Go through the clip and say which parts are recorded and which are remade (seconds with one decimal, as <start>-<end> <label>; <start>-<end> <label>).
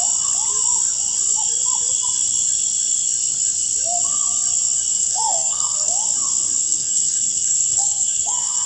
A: 0.0-4.9 recorded; 4.9-5.9 remade; 5.9-6.6 recorded; 6.6-8.7 remade